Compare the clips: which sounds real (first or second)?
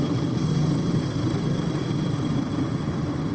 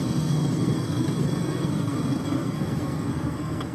first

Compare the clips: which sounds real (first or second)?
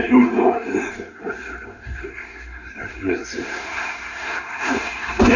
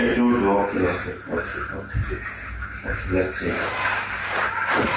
second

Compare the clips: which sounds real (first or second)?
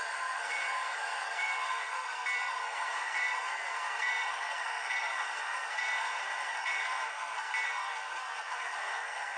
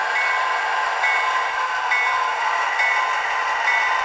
second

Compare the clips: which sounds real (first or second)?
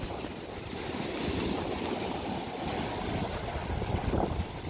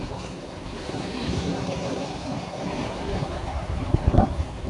first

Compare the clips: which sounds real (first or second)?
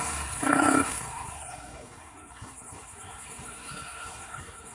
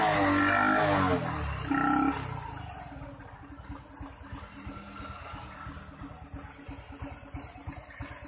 second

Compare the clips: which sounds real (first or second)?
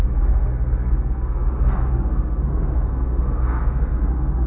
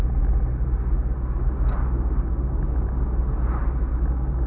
second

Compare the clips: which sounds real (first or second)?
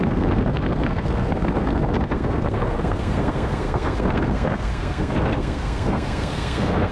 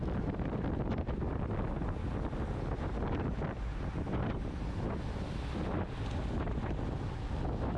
second